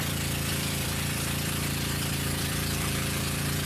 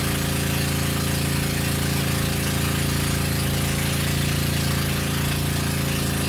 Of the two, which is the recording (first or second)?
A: second